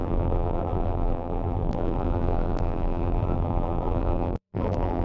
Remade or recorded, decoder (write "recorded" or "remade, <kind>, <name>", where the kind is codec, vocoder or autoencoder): remade, vocoder, BigVGAN v2